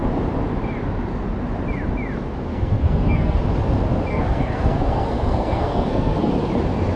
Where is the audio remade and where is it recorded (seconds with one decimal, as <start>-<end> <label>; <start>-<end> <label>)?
0.0-2.5 recorded; 2.5-3.4 remade; 3.4-4.1 recorded; 4.1-6.3 remade; 6.3-7.0 recorded